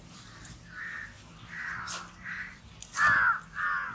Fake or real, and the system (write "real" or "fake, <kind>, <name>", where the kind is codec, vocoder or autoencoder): fake, vocoder, BigVGAN v2